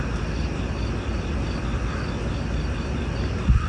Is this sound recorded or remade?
recorded